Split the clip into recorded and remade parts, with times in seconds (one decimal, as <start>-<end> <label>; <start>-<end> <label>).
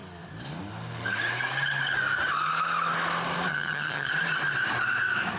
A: 0.0-3.5 recorded; 3.5-4.1 remade; 4.1-5.4 recorded